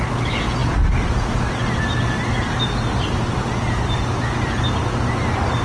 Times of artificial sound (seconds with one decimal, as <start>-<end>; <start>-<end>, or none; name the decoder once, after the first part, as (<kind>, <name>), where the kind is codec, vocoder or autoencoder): none